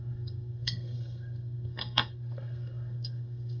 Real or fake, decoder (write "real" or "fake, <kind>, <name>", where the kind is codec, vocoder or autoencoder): fake, codec, SNAC